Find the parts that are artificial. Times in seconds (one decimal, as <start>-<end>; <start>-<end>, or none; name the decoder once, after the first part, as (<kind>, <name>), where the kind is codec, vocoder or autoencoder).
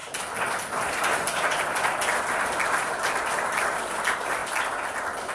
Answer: none